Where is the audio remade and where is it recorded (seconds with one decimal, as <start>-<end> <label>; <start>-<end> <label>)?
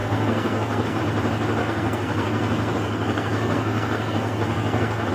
0.0-1.0 remade; 1.0-1.6 recorded; 1.6-5.1 remade